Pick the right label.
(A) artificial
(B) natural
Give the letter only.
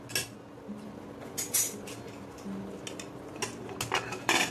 B